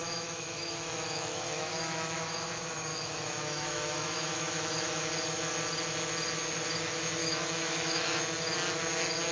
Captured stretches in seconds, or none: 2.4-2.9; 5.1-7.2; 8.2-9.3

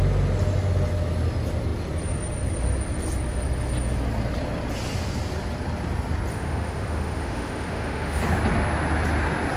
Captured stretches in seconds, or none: 0.0-6.3; 8.2-9.6

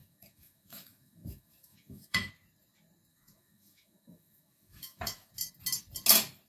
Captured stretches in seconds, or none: 2.3-3.1; 5.3-6.5

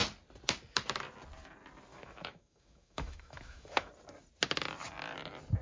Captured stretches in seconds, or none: 0.0-1.9; 3.9-5.6

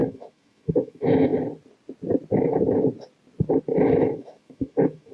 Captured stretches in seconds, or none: 1.3-4.0

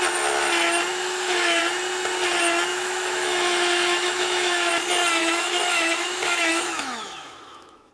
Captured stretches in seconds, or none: 0.0-0.9; 1.6-2.7; 4.7-5.2

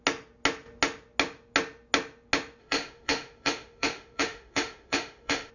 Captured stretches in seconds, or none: 0.0-2.6

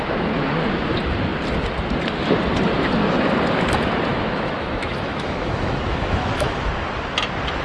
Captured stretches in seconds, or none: 0.0-4.1; 6.6-7.6